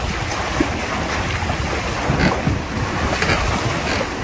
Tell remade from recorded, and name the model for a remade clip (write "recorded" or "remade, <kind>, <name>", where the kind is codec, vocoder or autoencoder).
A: recorded